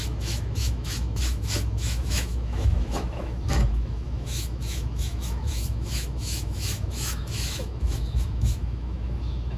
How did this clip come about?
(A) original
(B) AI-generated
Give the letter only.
B